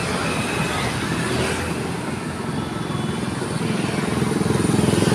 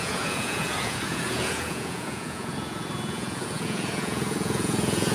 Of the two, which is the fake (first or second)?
second